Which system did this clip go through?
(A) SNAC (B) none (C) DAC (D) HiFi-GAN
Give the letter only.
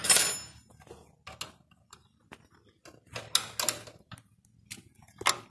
B